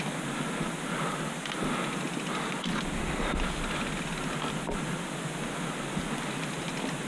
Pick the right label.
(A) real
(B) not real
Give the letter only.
A